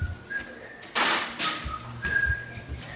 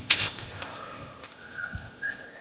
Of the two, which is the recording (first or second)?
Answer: first